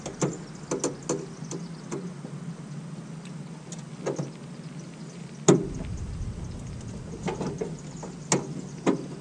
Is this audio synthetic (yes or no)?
no